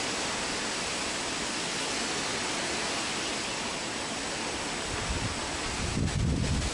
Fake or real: real